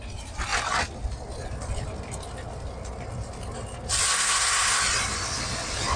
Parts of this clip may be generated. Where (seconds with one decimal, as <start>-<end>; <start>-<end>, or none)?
4.1-4.8